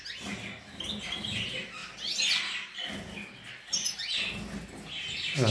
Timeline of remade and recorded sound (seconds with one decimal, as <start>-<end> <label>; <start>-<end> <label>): 0.0-5.5 recorded